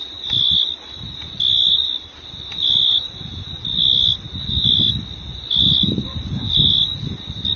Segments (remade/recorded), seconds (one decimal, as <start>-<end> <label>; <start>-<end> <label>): 0.0-7.6 recorded